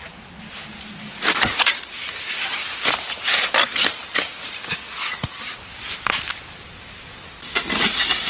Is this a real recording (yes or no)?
yes